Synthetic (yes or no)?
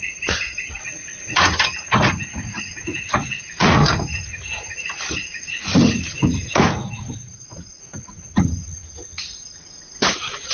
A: yes